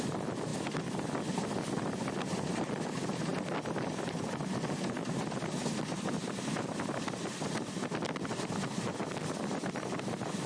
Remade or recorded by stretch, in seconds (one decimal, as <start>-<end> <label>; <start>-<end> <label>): 0.0-10.5 recorded

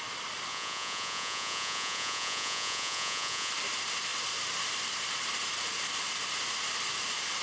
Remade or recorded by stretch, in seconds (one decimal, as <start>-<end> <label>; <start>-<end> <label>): 0.0-0.5 recorded; 0.5-3.5 remade; 3.5-7.4 recorded